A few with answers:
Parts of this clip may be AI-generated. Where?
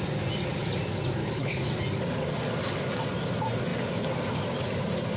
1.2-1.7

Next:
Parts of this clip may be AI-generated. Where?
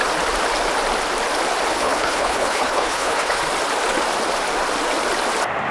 1.7-3.4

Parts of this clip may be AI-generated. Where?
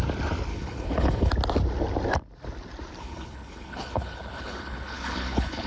0.5-1.3; 3.0-5.7